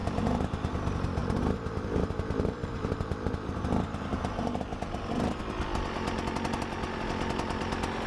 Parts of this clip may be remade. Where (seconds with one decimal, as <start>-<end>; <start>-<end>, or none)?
0.0-0.7; 1.2-5.4